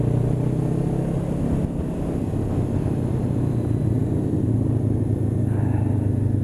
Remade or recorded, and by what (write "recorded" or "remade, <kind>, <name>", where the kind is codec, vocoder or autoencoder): recorded